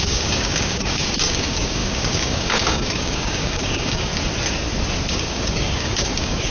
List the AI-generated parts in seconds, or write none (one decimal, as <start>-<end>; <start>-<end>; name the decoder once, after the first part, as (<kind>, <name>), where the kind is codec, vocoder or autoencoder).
0.0-4.1 (codec, DAC); 5.1-6.5